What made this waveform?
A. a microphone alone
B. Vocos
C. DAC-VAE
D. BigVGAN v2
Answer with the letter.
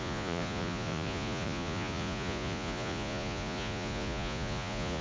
B